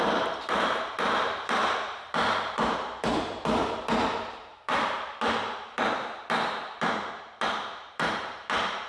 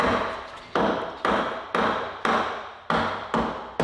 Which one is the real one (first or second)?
second